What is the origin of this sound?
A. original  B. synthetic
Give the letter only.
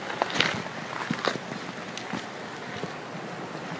A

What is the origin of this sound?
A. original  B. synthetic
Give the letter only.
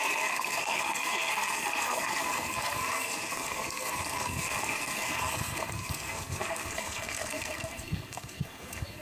B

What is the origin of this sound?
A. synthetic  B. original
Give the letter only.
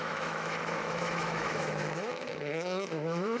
A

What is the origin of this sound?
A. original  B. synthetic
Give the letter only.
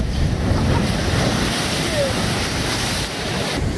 A